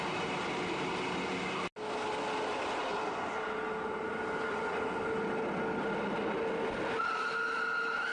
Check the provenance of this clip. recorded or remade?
recorded